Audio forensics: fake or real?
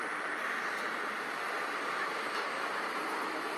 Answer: real